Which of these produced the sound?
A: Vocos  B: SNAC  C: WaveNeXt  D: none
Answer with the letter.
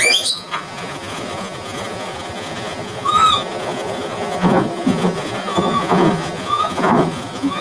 A